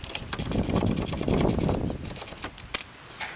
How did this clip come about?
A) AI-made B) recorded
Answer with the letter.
B